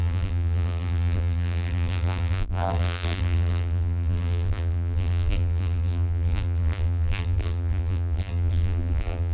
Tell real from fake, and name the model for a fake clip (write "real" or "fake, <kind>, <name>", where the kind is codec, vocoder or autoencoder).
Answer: fake, vocoder, BigVGAN v2